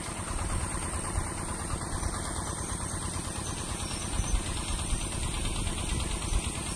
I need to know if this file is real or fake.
real